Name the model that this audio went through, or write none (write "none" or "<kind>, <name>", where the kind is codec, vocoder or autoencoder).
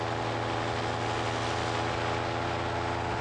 none